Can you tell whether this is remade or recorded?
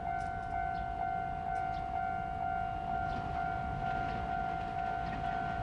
recorded